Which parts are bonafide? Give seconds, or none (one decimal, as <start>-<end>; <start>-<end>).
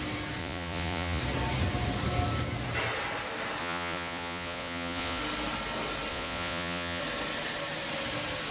0.0-0.4; 1.2-3.6; 5.2-6.1; 7.0-8.5